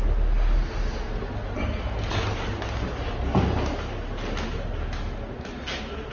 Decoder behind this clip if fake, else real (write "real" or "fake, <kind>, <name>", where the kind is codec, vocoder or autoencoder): real